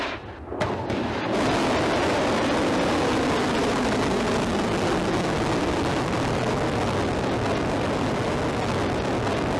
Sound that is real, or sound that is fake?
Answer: real